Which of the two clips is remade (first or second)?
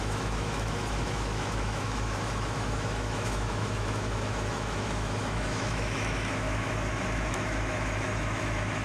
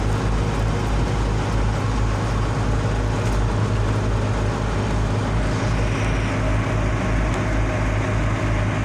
first